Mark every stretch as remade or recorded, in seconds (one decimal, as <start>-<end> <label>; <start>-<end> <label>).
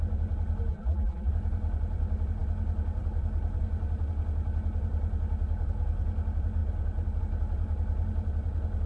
0.0-0.7 recorded; 0.7-1.3 remade; 1.3-8.9 recorded